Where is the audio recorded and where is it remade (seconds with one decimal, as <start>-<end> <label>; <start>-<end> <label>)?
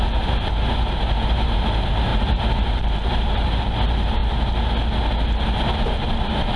0.0-4.2 remade; 4.2-5.9 recorded; 5.9-6.6 remade